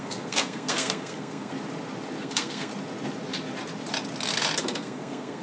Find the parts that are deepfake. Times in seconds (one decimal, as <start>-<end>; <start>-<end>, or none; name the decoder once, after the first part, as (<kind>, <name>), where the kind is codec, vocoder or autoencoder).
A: 0.0-1.5 (codec, SNAC); 2.2-2.7; 4.6-5.4